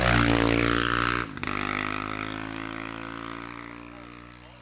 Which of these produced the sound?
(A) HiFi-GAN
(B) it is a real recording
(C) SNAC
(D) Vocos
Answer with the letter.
B